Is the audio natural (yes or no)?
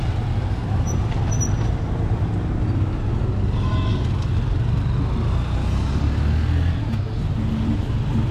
yes